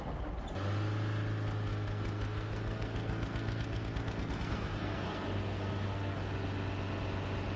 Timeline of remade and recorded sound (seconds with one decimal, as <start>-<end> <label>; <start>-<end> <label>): 0.0-1.7 recorded; 1.7-6.3 remade; 6.3-7.6 recorded